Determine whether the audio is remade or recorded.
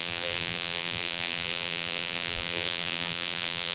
remade